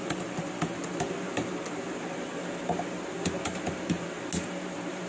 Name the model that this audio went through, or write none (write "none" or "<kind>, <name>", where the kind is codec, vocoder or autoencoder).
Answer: none